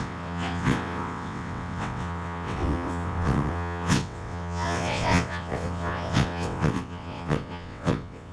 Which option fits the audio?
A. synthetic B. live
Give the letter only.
A